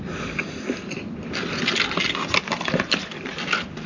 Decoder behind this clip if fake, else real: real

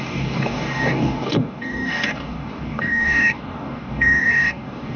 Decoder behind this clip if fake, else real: fake, codec, DAC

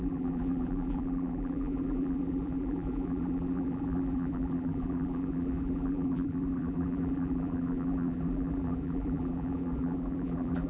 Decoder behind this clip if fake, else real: fake, vocoder, BigVGAN v2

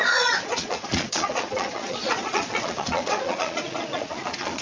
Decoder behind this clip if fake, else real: fake, vocoder, Vocos